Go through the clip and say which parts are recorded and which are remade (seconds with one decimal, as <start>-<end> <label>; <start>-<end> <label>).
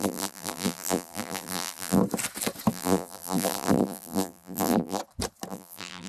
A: 0.0-2.0 remade; 2.0-2.7 recorded; 2.7-5.0 remade; 5.0-5.5 recorded; 5.5-6.1 remade